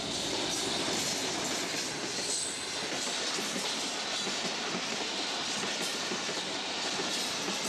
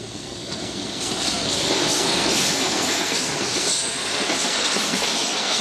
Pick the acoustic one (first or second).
first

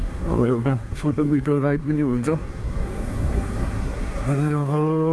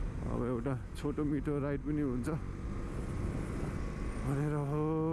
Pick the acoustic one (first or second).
second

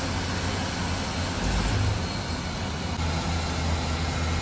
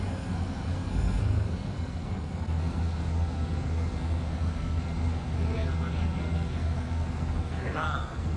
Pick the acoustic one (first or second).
first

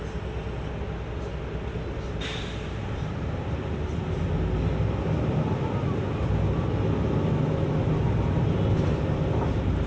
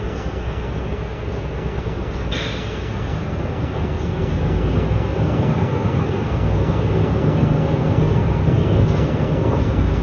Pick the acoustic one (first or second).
first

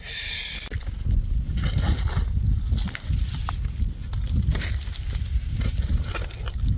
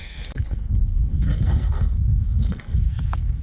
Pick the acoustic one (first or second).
first